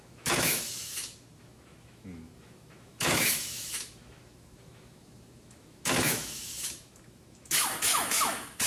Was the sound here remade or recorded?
remade